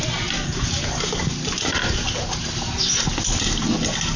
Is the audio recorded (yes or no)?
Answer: yes